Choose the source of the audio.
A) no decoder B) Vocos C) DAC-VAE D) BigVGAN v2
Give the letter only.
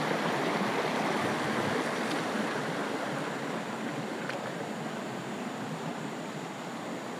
A